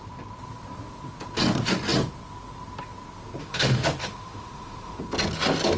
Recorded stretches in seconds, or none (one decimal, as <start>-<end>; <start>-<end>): 0.0-3.4; 5.0-5.8

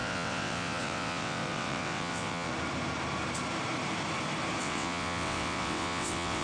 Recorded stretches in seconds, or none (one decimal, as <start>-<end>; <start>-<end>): 2.5-4.6

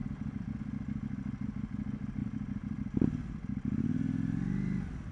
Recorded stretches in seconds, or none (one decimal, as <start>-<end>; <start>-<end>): 0.6-2.2

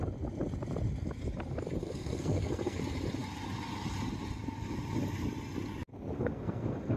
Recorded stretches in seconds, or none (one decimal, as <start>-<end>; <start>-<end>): 0.0-1.8; 2.8-5.9

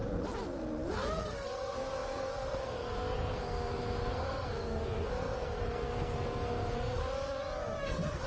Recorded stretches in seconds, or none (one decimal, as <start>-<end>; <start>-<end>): 0.0-0.9; 7.0-7.8

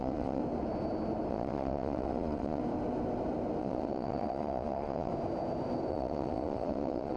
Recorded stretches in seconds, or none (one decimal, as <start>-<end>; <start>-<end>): 0.4-1.3; 2.6-3.6; 5.1-5.9